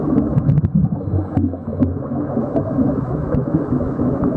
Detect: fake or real fake